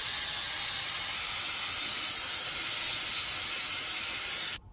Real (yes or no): yes